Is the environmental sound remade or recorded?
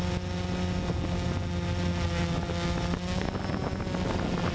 recorded